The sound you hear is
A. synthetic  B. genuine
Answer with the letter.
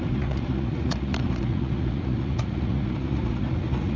A